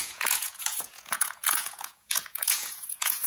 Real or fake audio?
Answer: fake